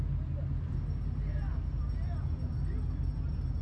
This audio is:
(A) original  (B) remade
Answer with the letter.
A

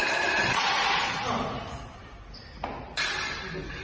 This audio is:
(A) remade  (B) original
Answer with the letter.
B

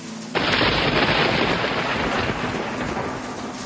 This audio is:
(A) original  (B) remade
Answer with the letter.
A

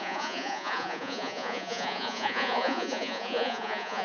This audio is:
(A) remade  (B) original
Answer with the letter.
A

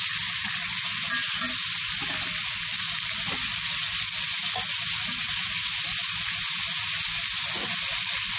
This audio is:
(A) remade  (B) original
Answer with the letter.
B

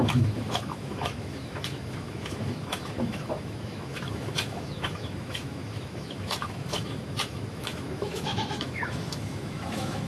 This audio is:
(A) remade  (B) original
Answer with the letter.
A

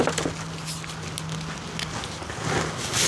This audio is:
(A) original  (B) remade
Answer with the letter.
A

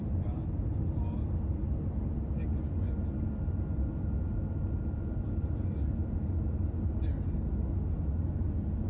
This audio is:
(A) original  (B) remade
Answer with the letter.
A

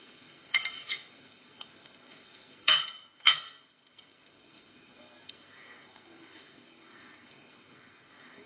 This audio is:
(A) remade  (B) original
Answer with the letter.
A